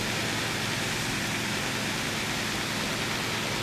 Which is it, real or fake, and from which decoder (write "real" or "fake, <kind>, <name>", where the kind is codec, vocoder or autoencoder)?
real